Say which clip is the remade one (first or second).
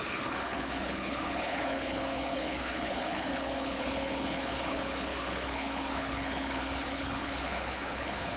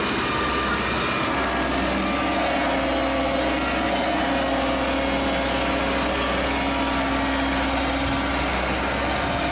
first